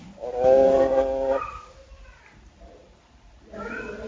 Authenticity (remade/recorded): recorded